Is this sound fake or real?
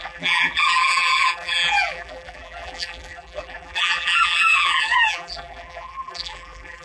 fake